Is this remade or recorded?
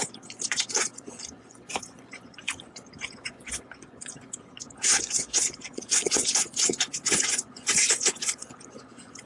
remade